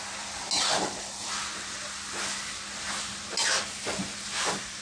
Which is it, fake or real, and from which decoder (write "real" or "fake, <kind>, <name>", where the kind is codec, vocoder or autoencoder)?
real